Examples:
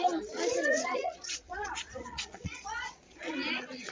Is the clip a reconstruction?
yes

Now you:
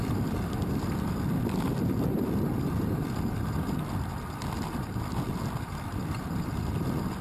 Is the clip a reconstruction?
no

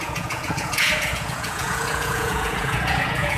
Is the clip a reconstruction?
yes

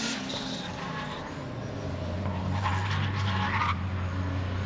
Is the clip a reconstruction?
no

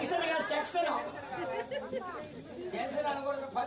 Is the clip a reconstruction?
no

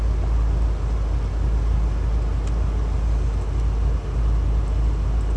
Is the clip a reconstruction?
no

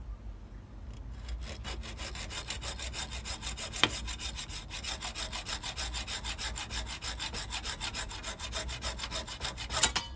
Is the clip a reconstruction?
no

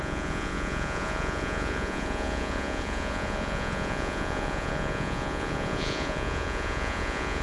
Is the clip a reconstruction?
yes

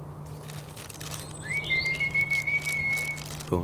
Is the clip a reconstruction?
no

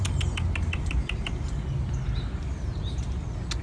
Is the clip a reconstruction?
no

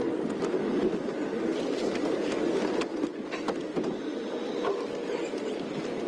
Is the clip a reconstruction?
no